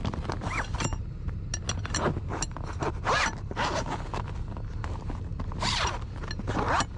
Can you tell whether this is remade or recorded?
recorded